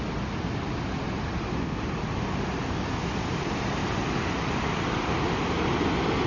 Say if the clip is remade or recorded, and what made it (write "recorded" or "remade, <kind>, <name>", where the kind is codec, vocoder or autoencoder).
recorded